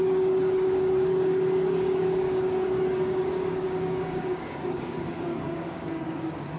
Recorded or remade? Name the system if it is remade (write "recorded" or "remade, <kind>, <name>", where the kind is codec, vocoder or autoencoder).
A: remade, codec, DAC